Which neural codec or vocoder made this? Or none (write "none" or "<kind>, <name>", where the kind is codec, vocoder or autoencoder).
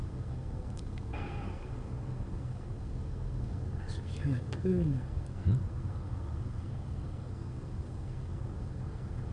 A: codec, SNAC